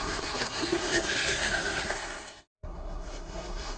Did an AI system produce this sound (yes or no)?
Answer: yes